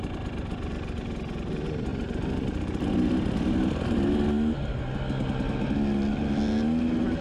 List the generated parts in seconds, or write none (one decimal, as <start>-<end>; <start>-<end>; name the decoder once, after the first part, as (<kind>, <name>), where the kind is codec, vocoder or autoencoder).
none